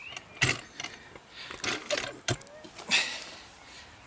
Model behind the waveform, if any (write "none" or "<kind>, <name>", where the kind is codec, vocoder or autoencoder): none